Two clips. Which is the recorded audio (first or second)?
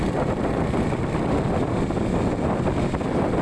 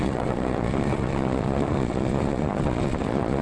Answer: first